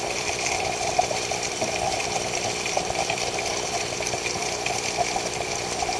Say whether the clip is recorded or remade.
remade